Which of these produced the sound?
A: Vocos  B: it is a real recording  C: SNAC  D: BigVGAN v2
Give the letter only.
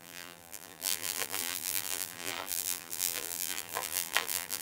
D